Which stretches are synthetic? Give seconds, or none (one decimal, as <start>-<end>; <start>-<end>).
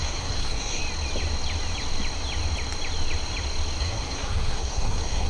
0.0-0.8; 3.8-5.3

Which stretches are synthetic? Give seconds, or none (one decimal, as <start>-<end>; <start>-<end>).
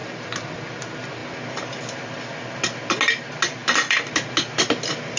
none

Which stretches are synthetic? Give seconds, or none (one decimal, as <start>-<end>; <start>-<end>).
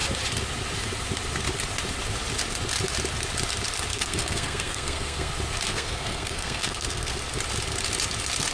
3.9-5.3; 5.7-7.2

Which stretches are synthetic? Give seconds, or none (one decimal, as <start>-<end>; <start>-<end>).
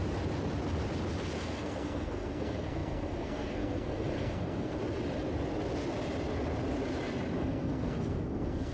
1.4-4.8; 7.4-8.7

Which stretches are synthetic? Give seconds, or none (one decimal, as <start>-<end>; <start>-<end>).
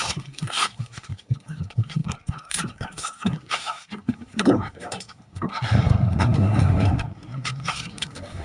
0.0-8.4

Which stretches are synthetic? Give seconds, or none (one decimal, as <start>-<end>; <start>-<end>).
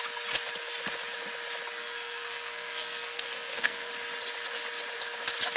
1.8-3.9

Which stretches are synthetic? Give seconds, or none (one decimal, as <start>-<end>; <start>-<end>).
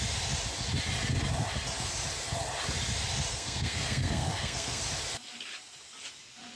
3.3-4.8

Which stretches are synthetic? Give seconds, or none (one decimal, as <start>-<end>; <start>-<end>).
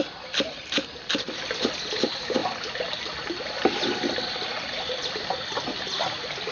none